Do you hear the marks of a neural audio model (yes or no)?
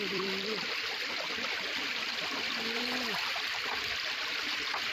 yes